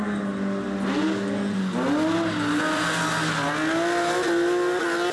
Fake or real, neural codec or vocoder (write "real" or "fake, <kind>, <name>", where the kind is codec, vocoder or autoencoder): real